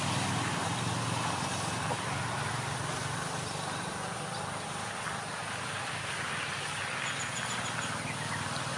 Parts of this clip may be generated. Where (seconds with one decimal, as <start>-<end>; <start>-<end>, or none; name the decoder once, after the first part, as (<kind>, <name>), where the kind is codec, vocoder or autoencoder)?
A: none